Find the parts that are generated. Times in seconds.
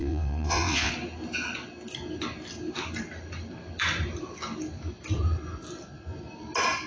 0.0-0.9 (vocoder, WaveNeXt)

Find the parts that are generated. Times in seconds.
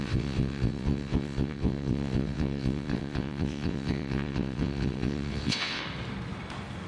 0.0-5.8 (vocoder, WaveNeXt)